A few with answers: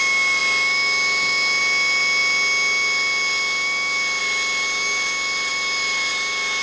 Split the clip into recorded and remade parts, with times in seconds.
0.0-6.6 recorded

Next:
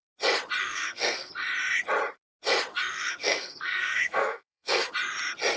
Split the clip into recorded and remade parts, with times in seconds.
0.0-0.6 recorded; 0.6-1.3 remade; 1.3-2.7 recorded; 2.7-4.9 remade; 4.9-5.6 recorded

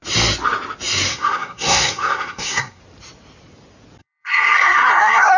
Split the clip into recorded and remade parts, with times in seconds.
0.0-1.1 recorded; 1.1-2.8 remade; 2.8-4.0 recorded; 4.0-5.4 remade

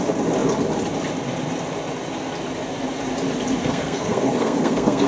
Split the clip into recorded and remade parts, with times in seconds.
0.0-3.6 recorded; 3.6-5.1 remade

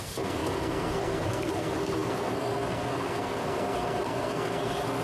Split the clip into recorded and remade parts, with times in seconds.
0.0-5.0 remade

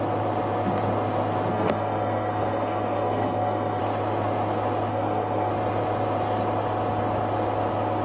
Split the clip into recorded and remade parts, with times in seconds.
0.0-1.5 recorded; 1.5-3.8 remade; 3.8-4.9 recorded; 4.9-5.5 remade; 5.5-8.0 recorded